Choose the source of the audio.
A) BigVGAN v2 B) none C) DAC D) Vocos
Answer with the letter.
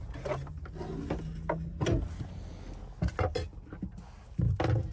B